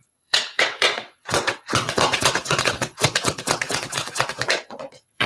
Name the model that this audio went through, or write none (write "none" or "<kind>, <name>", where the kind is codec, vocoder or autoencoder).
vocoder, WaveNeXt